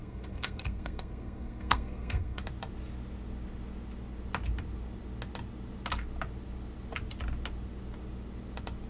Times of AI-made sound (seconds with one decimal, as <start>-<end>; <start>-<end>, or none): 0.0-2.4